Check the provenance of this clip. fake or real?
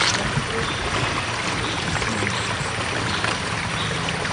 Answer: real